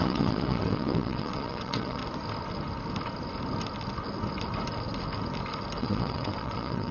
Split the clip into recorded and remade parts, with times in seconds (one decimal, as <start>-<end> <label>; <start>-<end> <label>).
0.0-2.0 remade; 2.0-5.8 recorded; 5.8-6.9 remade